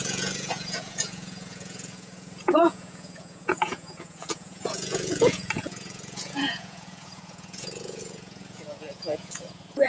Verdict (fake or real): fake